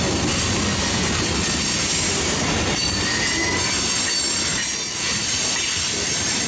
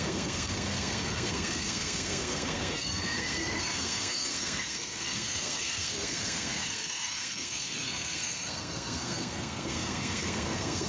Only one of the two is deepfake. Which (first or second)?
second